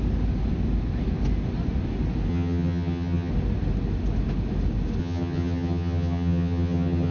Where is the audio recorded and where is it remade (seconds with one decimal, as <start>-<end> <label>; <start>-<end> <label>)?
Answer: 0.0-2.3 recorded; 2.3-3.3 remade; 3.3-5.0 recorded; 5.0-7.1 remade